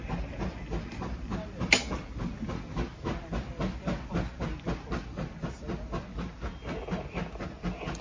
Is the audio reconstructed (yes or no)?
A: no